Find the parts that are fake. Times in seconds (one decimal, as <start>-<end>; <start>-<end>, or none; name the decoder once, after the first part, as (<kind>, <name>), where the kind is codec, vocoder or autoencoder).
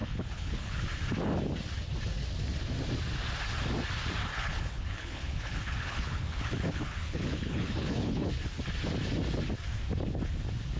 0.0-0.8 (codec, HILCodec); 4.3-8.3